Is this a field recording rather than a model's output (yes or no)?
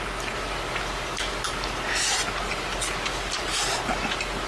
yes